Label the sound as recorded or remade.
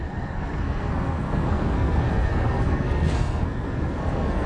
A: remade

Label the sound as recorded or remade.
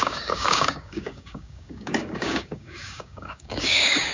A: remade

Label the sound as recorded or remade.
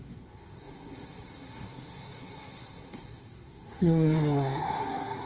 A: remade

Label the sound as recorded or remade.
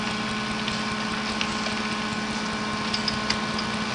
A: recorded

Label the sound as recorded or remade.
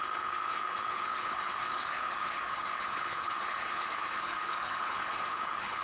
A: remade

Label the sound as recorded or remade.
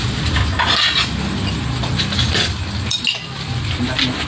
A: recorded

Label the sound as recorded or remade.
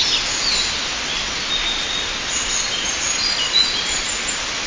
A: recorded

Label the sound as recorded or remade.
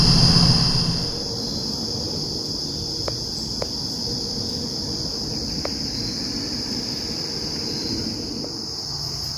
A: recorded